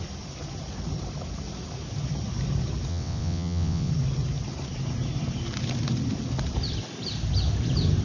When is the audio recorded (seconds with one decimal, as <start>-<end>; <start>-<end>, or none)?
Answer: 0.0-2.9; 3.9-8.0

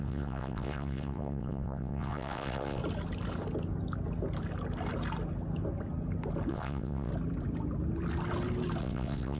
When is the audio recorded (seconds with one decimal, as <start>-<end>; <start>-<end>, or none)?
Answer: 2.8-6.5; 7.1-8.8

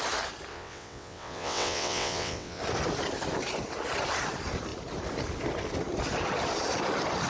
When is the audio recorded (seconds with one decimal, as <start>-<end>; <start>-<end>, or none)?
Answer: 0.0-0.5; 2.6-7.3

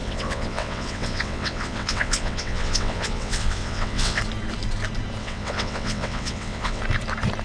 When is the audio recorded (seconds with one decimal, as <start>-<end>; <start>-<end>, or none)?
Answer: 4.2-5.2; 6.8-7.4

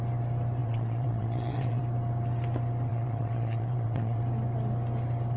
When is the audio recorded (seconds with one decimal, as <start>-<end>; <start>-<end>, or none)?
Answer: 0.0-0.6; 1.8-2.9; 4.2-5.4